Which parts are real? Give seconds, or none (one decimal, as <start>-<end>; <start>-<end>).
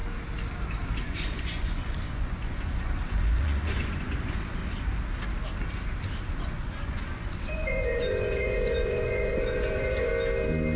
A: 0.0-1.0; 4.6-6.3; 10.1-10.8